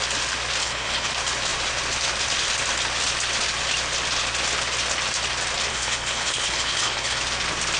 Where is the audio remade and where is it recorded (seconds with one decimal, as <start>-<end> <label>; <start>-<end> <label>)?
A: 0.0-0.6 recorded; 0.6-1.1 remade; 1.1-5.7 recorded; 5.7-7.2 remade; 7.2-7.8 recorded